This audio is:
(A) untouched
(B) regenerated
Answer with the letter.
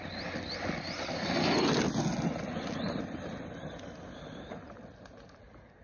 A